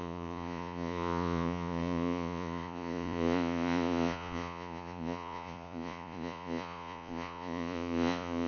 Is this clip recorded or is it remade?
remade